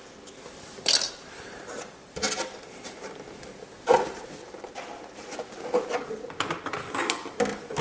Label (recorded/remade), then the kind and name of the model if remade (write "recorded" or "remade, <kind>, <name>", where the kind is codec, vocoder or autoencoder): recorded